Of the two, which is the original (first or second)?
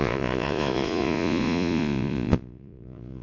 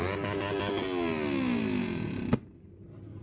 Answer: second